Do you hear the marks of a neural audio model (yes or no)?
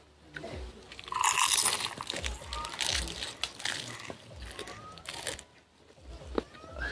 no